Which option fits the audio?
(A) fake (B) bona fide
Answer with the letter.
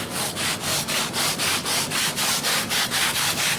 A